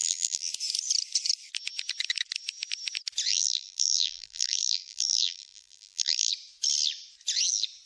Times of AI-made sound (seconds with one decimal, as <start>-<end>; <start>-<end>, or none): 0.0-0.5; 3.3-6.3

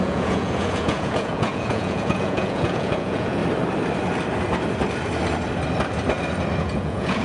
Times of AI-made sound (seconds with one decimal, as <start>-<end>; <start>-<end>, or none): 0.0-3.4; 6.6-7.2